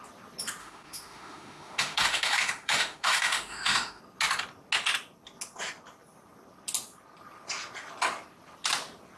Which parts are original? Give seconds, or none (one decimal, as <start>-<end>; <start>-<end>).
0.0-0.6; 4.0-9.2